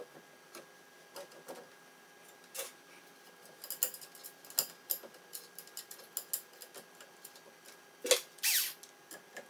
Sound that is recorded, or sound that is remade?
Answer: recorded